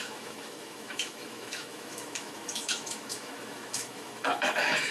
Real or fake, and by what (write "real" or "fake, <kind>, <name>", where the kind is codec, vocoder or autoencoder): fake, autoencoder, DAC-VAE